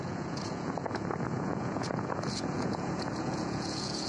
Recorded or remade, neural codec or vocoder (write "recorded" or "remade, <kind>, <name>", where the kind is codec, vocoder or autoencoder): remade, vocoder, Vocos